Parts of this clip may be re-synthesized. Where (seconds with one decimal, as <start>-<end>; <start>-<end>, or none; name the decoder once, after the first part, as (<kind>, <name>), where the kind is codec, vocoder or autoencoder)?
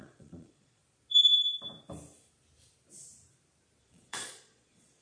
0.0-0.8 (vocoder, Vocos); 3.8-5.0